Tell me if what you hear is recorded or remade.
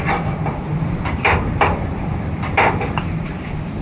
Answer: recorded